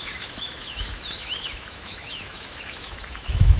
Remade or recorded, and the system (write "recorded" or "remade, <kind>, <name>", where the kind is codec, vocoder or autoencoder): remade, autoencoder, DAC-VAE